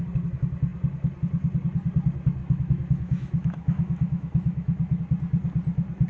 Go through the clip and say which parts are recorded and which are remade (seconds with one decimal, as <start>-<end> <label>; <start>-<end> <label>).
0.0-2.4 recorded; 2.4-5.0 remade; 5.0-6.1 recorded